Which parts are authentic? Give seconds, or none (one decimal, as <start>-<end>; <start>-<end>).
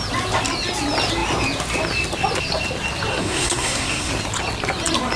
0.0-3.1; 4.1-5.2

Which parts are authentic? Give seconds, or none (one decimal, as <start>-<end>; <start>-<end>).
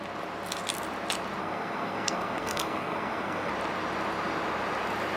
0.0-1.4; 3.5-5.2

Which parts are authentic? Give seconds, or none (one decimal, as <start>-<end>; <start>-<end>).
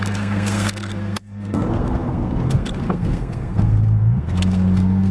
none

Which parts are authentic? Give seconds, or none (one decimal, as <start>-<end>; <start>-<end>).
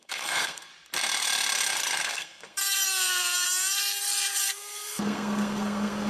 0.7-2.0; 2.6-4.4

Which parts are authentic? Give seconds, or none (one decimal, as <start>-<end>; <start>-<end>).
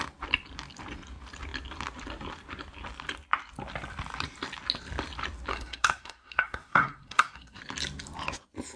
0.0-5.5; 7.6-8.8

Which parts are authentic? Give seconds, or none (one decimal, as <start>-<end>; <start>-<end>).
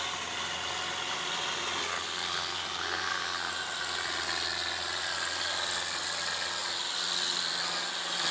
0.0-1.9; 3.5-8.3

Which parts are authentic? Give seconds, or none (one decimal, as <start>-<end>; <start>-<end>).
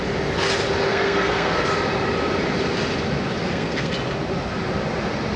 0.0-0.9; 1.7-3.4; 3.9-5.4